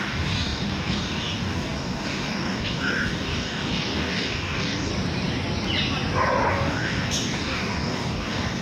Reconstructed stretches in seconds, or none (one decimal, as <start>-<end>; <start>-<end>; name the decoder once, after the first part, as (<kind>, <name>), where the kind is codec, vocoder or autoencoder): 0.0-4.9 (codec, DAC); 6.5-8.6